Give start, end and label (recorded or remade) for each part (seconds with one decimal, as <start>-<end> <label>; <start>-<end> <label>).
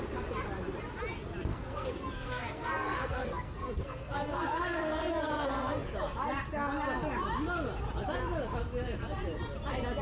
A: 0.0-1.5 recorded; 1.5-5.7 remade; 5.7-10.0 recorded